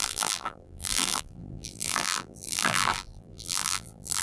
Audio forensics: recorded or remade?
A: remade